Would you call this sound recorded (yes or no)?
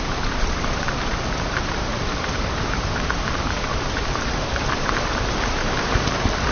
no